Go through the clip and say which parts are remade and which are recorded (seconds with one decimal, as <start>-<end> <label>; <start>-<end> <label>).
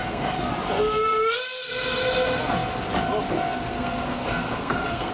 0.0-0.5 remade; 0.5-3.7 recorded; 3.7-5.1 remade